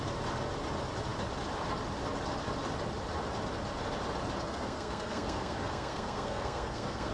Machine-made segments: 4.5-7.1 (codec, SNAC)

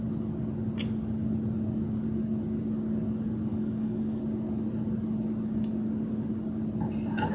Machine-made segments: 3.5-4.2 (codec, DAC)